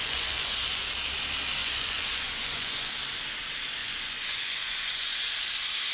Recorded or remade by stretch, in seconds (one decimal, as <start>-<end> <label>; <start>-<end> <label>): 0.0-0.9 remade; 0.9-1.6 recorded; 1.6-2.9 remade; 2.9-3.8 recorded; 3.8-5.3 remade; 5.3-5.9 recorded